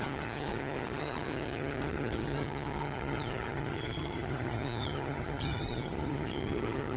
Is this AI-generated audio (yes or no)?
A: yes